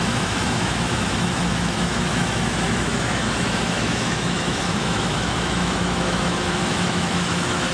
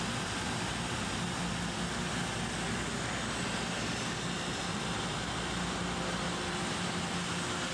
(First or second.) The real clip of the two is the second